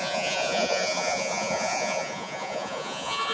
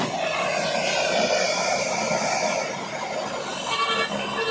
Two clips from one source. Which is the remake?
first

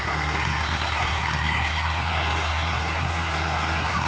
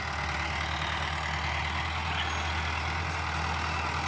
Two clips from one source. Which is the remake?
first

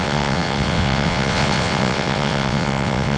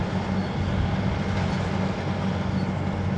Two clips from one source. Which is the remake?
first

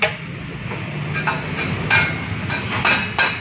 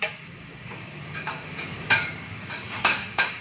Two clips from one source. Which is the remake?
second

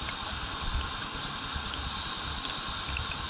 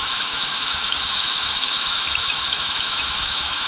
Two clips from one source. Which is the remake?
second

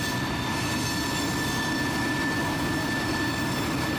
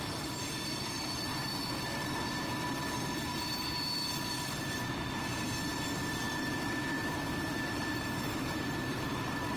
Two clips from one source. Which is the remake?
second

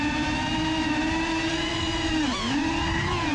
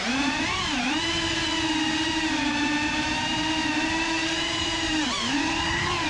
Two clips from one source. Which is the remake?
second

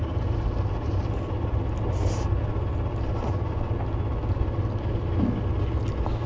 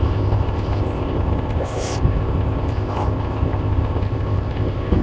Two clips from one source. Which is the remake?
second